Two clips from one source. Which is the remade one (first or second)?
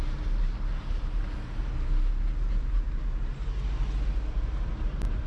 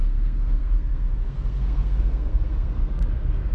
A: second